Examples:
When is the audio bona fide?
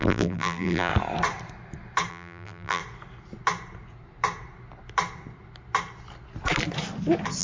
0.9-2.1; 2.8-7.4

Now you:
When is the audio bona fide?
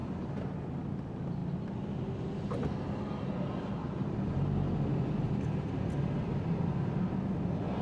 0.0-7.8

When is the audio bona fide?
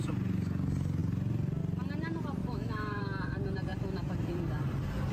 0.0-2.4; 3.0-5.1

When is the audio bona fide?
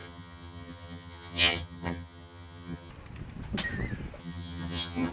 2.9-4.2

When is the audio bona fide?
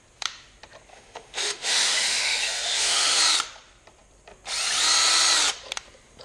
0.0-0.9; 3.2-6.2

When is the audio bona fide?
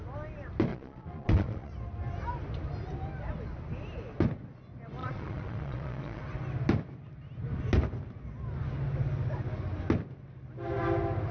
0.0-0.7; 1.7-5.0; 6.2-11.3